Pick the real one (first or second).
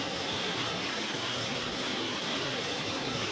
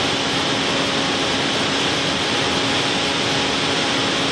second